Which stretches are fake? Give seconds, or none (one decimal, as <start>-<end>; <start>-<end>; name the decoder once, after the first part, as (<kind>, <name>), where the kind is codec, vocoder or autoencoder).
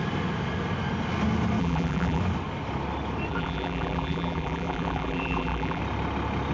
1.6-2.2 (vocoder, BigVGAN v2); 3.3-5.8